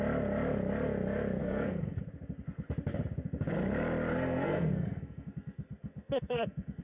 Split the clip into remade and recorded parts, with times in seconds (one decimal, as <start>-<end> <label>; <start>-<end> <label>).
0.0-1.4 recorded; 1.4-2.0 remade; 2.0-4.1 recorded; 4.1-6.8 remade